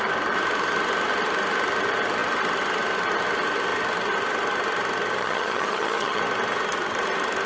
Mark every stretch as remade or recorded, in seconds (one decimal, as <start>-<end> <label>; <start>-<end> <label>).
0.0-5.2 recorded; 5.2-6.2 remade; 6.2-7.5 recorded

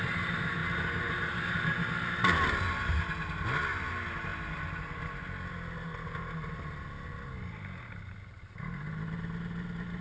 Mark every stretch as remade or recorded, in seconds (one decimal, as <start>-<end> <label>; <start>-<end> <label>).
0.0-10.0 recorded

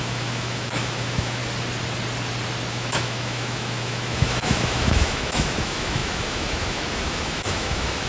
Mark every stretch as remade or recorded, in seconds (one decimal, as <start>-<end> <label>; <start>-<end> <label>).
0.0-1.4 remade; 1.4-2.7 recorded; 2.7-8.1 remade

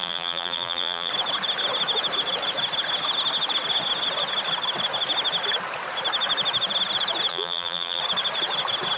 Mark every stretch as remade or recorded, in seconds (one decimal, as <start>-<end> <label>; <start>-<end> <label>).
0.0-1.1 remade; 1.1-7.3 recorded; 7.3-8.0 remade; 8.0-9.0 recorded

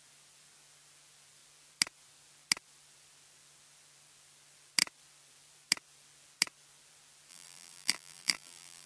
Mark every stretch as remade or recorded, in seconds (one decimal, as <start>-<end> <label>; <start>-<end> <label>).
0.0-7.3 recorded; 7.3-8.9 remade

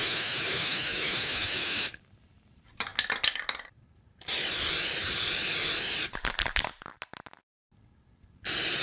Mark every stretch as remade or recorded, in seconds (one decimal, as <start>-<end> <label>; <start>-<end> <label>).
0.0-2.0 remade; 2.0-8.8 recorded